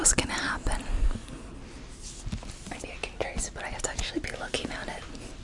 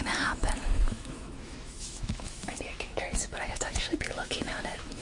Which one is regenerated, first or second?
second